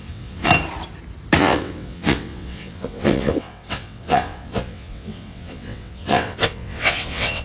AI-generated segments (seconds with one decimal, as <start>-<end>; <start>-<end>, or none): 0.0-0.5; 1.4-7.4